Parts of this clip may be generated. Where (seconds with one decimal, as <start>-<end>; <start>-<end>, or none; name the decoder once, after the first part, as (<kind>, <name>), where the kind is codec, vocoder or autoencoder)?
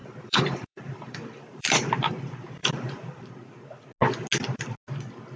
0.0-2.1 (vocoder, BigVGAN v2); 2.6-3.3